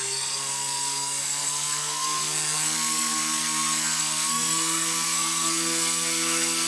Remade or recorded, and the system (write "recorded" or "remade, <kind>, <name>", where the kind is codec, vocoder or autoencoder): remade, codec, SNAC